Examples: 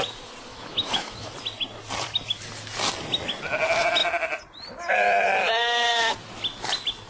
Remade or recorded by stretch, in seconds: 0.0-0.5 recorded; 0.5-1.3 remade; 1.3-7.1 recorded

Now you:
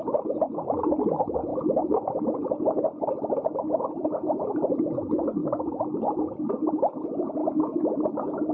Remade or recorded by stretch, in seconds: 0.0-8.5 recorded

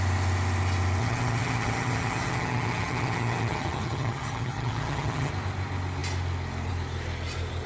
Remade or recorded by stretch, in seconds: 0.0-1.0 recorded; 1.0-5.3 remade; 5.3-7.7 recorded

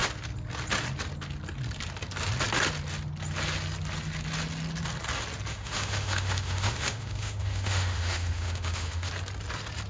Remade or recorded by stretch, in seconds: 0.0-5.5 recorded; 5.5-9.1 remade; 9.1-9.9 recorded